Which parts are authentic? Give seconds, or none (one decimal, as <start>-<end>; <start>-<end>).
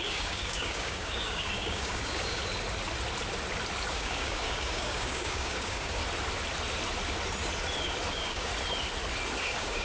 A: 2.4-3.9; 6.0-8.1; 8.5-9.4